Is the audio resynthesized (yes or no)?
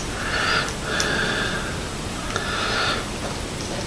no